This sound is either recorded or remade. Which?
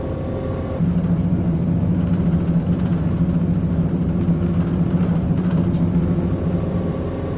recorded